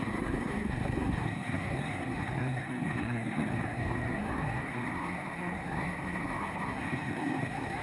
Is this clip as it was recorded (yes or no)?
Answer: no